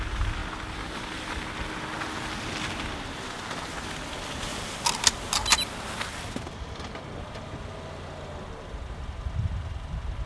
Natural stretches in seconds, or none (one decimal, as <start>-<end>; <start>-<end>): 0.0-10.3